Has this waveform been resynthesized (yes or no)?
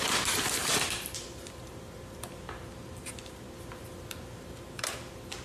yes